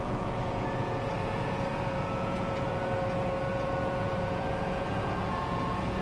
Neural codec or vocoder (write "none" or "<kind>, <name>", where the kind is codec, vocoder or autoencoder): vocoder, Vocos